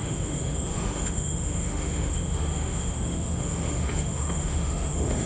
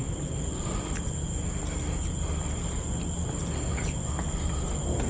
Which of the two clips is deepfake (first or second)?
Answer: first